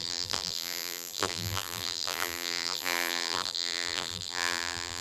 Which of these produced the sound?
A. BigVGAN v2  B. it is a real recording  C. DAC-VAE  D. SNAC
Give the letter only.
A